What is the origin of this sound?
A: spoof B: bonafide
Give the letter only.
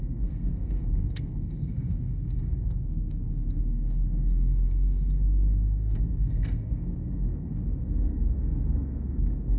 A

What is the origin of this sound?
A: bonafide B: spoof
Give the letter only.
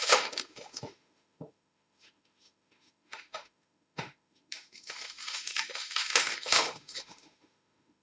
B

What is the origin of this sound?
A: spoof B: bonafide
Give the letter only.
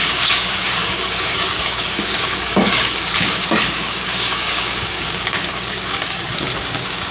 A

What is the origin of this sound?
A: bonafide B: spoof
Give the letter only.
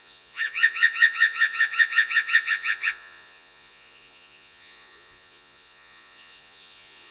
B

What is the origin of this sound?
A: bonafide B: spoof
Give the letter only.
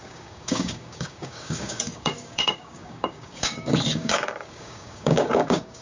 B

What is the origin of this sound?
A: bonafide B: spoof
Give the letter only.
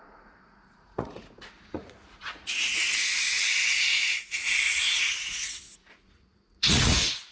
B